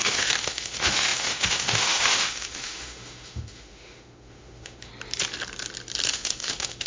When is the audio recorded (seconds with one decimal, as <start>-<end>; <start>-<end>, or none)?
4.9-6.1